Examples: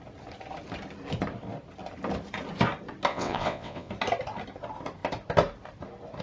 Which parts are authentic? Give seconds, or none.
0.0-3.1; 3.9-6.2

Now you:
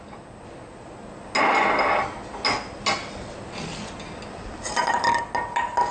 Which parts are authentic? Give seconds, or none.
0.0-5.9

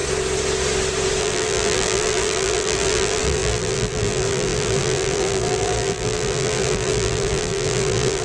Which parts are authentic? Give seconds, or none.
0.0-1.2

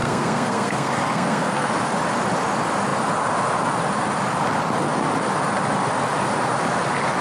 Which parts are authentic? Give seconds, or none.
1.7-7.2

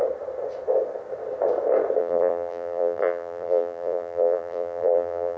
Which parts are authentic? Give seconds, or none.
0.0-2.0